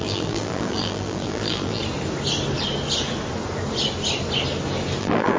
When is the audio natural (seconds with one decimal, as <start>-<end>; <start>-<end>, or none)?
1.8-5.0